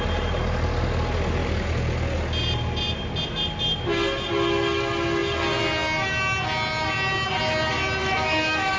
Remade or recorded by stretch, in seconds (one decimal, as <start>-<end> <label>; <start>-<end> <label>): 0.0-8.0 recorded; 8.0-8.8 remade